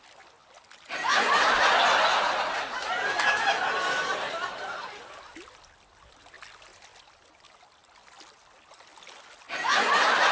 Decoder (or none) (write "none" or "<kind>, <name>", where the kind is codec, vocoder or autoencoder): none